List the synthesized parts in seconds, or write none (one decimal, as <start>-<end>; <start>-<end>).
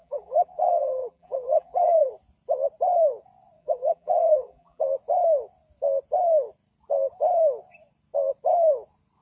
0.0-2.1; 3.6-4.8